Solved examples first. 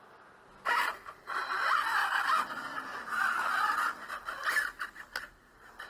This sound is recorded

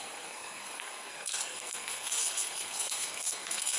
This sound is remade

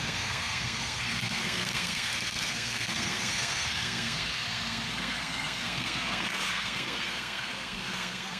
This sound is remade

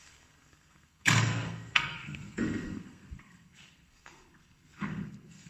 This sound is remade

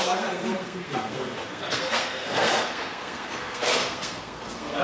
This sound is remade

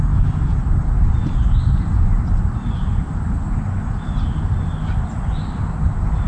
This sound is recorded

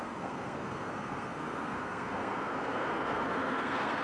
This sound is remade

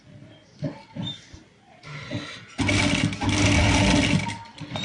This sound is recorded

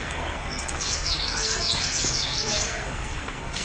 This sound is remade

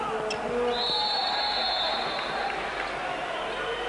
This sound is recorded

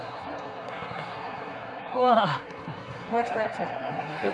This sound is remade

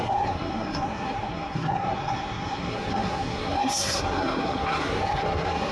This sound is remade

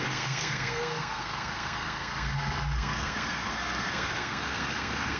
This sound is remade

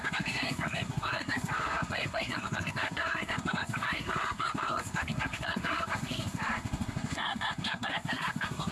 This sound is remade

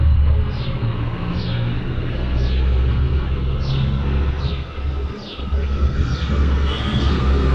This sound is remade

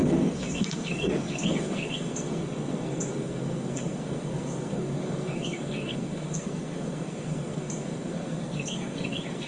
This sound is remade